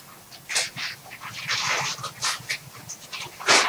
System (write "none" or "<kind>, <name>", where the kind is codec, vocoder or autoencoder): none